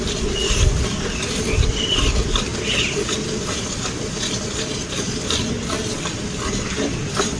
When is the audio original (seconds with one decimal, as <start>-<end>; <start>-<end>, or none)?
0.0-7.4